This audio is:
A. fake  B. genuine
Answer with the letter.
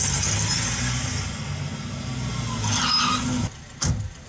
B